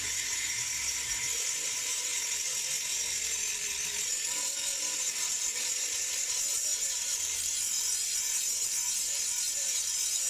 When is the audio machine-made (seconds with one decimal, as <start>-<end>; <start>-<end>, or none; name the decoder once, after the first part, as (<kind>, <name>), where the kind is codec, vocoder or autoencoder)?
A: 0.0-2.1 (vocoder, BigVGAN v2); 5.0-10.3